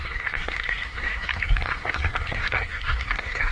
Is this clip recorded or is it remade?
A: remade